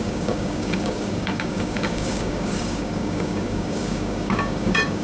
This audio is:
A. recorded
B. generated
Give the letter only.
B